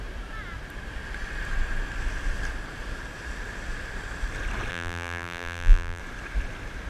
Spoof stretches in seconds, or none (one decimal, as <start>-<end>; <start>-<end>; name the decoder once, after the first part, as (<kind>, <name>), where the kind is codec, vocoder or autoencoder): 4.7-6.0 (vocoder, BigVGAN v2)